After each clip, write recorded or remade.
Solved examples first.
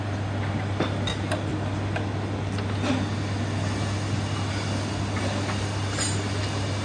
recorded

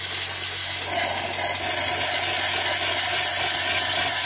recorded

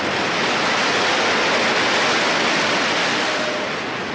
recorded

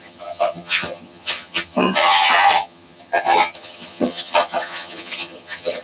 remade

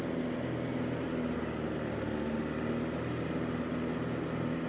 recorded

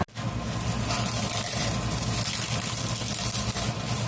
recorded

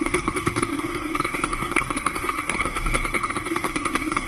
remade